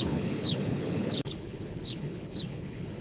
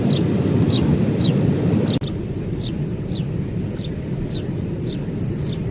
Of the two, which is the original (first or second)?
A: second